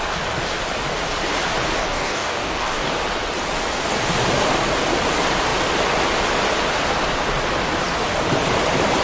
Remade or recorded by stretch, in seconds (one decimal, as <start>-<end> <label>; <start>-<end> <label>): 0.0-1.8 recorded; 1.8-2.9 remade; 2.9-9.0 recorded